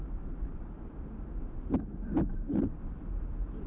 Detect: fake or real real